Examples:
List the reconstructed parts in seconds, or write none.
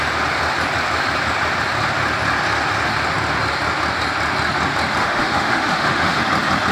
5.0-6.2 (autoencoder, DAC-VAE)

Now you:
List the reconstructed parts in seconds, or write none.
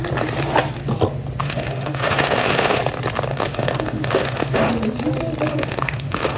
1.4-2.8 (autoencoder, DAC-VAE); 3.3-4.7; 5.5-6.4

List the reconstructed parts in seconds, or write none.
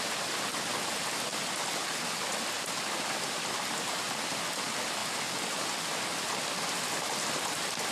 none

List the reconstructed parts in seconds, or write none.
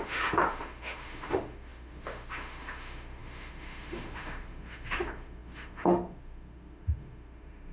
0.0-7.7 (autoencoder, DAC-VAE)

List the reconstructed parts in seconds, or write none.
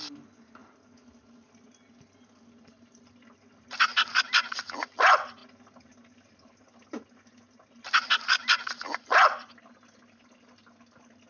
none